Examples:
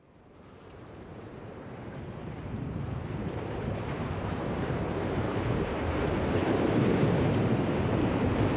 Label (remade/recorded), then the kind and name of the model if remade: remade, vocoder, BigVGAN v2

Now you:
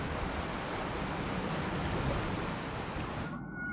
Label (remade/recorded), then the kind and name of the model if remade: recorded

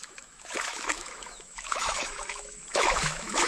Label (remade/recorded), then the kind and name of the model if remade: remade, autoencoder, DAC-VAE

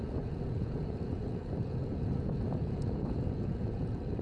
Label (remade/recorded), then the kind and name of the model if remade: remade, vocoder, Vocos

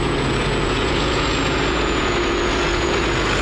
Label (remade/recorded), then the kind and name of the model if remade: remade, vocoder, Vocos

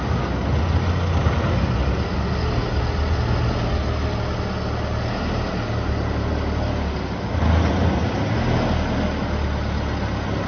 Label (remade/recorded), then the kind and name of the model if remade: recorded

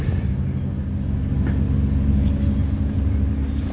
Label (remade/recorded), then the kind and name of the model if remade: recorded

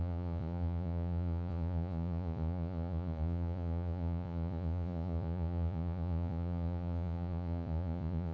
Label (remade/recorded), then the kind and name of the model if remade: remade, vocoder, Vocos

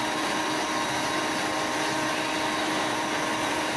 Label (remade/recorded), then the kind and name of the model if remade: recorded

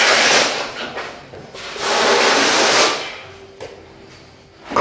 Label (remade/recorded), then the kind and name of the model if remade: recorded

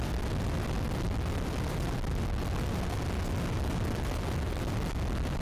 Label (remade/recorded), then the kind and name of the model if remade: recorded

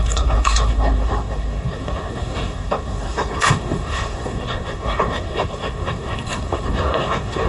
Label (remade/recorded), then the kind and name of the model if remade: remade, codec, SNAC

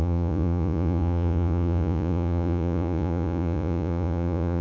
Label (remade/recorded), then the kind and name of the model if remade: remade, vocoder, Vocos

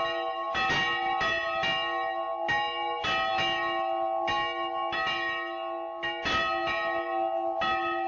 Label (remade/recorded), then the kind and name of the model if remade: recorded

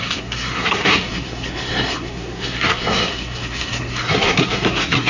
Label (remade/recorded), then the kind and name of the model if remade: remade, codec, SNAC